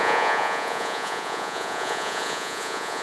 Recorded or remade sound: remade